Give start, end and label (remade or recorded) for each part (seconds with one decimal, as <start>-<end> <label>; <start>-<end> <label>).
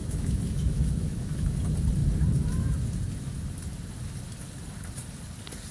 0.0-1.6 remade; 1.6-5.7 recorded